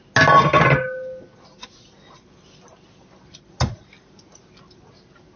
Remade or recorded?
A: recorded